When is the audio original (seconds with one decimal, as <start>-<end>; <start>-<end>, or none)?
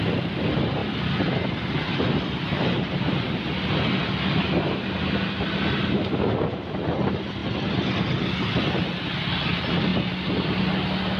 0.0-11.2